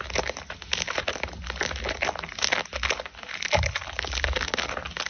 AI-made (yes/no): no